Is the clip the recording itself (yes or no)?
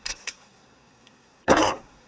no